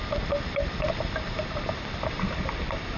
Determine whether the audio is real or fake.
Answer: real